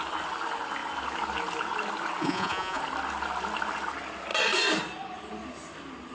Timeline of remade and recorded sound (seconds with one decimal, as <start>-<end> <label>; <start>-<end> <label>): 0.0-2.2 recorded; 2.2-2.8 remade; 2.8-6.1 recorded